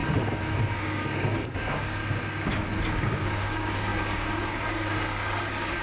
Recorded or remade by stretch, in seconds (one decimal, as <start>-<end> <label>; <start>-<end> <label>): 0.0-0.7 recorded; 0.7-2.0 remade; 2.0-3.0 recorded; 3.0-5.8 remade